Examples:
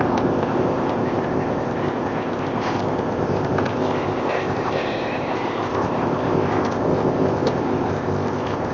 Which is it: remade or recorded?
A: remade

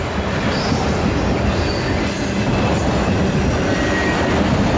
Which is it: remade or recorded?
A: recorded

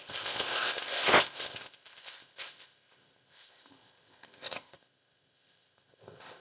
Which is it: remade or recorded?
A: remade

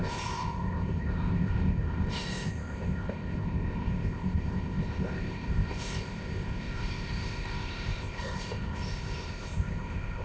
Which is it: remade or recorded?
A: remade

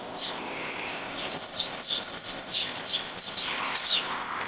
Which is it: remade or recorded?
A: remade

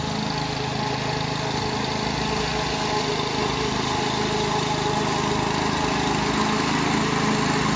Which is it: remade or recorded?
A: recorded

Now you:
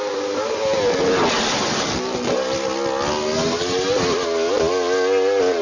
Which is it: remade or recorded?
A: recorded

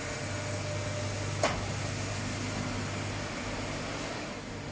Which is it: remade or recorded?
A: recorded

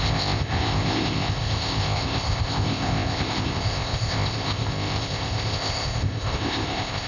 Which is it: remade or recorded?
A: remade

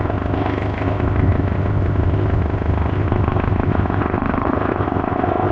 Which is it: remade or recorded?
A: remade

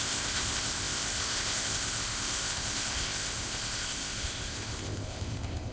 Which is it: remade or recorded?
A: remade